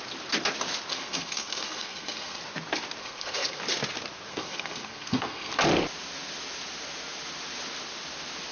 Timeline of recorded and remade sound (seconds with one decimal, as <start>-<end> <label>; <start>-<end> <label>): 0.0-0.9 recorded; 0.9-2.4 remade; 2.4-3.0 recorded; 3.0-3.6 remade; 3.6-4.3 recorded; 4.3-5.5 remade; 5.5-8.5 recorded